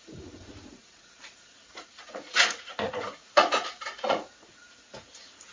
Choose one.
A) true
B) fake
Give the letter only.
B